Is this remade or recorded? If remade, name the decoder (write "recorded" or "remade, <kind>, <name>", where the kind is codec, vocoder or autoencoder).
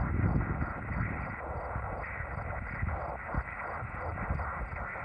recorded